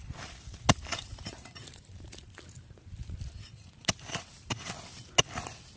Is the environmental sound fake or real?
real